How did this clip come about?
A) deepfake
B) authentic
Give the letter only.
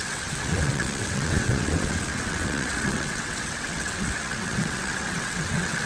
A